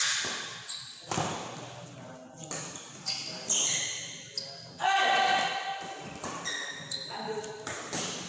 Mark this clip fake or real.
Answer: real